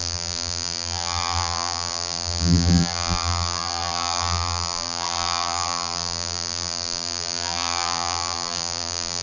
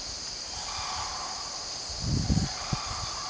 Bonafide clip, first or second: second